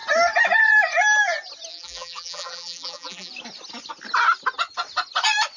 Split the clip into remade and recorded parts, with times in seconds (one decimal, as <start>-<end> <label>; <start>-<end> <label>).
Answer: 0.0-1.7 recorded; 1.7-3.3 remade; 3.3-5.6 recorded